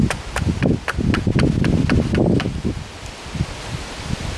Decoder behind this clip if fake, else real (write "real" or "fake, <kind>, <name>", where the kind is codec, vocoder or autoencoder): real